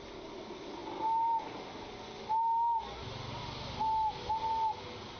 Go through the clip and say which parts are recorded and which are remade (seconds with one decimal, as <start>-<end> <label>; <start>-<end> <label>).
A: 0.0-5.2 recorded